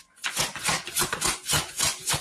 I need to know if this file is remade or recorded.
remade